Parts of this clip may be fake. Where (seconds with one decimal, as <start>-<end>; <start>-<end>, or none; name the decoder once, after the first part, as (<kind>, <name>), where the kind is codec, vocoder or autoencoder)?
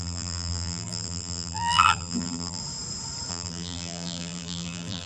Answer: 0.0-2.6 (vocoder, BigVGAN v2); 3.3-5.1